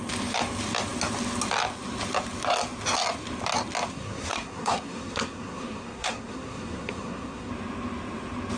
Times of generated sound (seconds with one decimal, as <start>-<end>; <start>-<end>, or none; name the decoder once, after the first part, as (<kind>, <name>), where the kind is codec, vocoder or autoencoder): 3.9-7.5 (codec, SNAC)